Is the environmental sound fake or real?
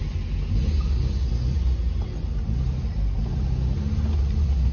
real